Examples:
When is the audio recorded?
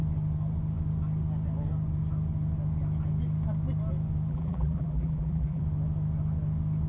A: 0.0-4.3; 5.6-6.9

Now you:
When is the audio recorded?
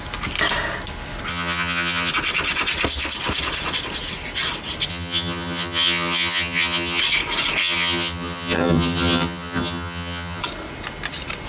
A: 0.0-1.3; 2.1-4.9; 7.0-7.6; 10.4-11.5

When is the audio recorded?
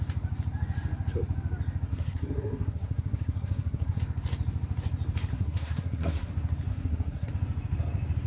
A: 0.0-1.9; 4.0-5.3; 6.3-6.7; 7.3-8.3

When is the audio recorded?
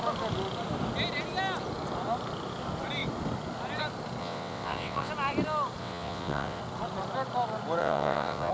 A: 0.0-4.2; 5.1-5.8; 6.6-7.8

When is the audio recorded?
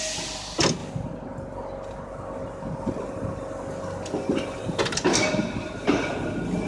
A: 0.0-6.7